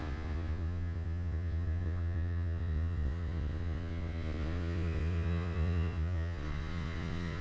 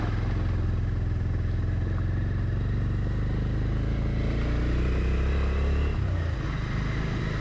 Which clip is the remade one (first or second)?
first